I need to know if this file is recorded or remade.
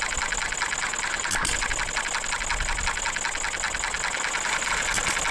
recorded